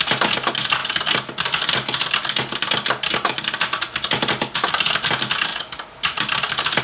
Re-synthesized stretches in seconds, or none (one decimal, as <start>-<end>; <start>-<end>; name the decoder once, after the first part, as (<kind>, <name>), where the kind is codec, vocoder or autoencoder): none